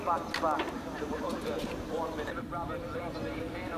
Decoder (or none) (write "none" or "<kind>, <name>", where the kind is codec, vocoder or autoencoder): none